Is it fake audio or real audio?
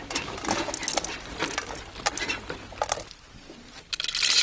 real